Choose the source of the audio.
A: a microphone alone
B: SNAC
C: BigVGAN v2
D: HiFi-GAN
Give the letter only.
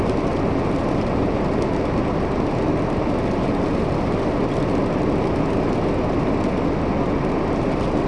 A